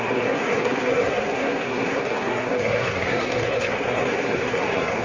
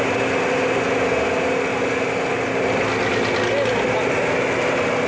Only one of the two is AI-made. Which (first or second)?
first